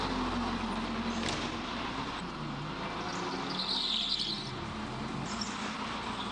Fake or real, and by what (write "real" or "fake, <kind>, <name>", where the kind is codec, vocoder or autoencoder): real